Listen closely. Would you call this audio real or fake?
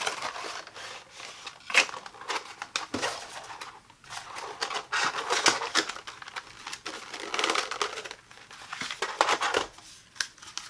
real